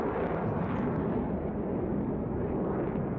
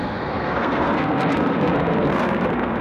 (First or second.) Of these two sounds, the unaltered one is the first